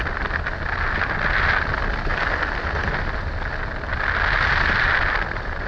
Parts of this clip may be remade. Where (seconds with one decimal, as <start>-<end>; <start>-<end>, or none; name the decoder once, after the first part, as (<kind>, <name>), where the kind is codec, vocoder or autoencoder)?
none